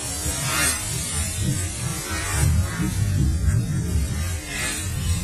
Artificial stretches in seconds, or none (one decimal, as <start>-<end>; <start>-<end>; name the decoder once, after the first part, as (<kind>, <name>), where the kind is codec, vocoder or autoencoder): 0.0-1.9 (vocoder, BigVGAN v2); 3.6-5.2

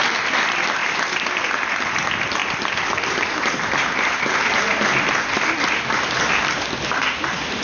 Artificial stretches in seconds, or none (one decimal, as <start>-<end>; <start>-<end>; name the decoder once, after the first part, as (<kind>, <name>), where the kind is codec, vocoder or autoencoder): none

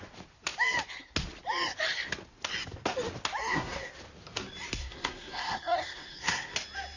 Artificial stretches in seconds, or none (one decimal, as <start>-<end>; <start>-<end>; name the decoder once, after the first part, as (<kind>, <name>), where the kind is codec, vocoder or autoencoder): 3.4-3.9 (codec, SNAC); 4.8-6.5

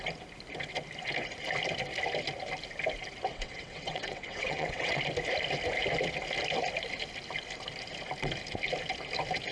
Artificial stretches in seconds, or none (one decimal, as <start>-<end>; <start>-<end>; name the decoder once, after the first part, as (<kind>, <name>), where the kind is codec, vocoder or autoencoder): 3.3-5.0 (vocoder, WaveNeXt)